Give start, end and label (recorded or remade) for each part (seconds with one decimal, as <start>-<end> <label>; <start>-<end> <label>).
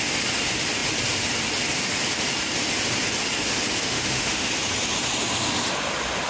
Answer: 0.0-3.8 recorded; 3.8-4.5 remade; 4.5-6.3 recorded